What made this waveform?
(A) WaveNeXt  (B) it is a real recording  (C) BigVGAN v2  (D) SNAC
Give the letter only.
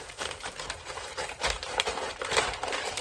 C